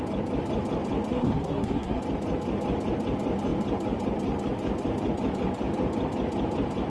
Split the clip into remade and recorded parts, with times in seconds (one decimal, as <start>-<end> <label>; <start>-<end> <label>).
0.0-1.1 recorded; 1.1-2.0 remade; 2.0-6.9 recorded